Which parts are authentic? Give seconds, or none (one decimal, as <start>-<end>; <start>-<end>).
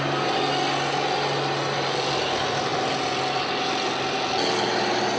0.0-5.2